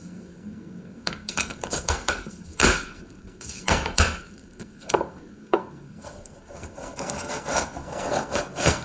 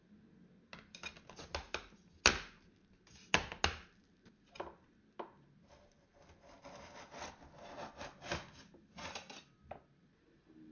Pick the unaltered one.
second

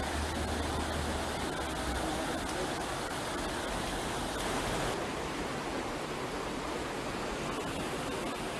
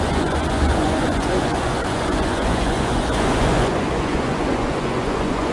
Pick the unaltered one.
first